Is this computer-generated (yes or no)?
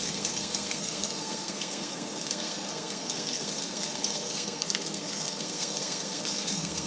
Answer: yes